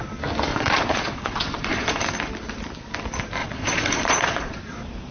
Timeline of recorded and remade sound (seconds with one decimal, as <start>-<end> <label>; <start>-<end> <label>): 0.0-0.5 recorded; 0.5-2.1 remade; 2.1-3.4 recorded; 3.4-4.6 remade; 4.6-5.1 recorded